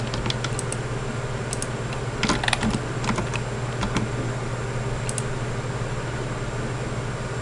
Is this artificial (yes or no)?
no